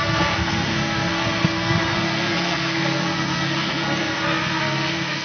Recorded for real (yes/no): no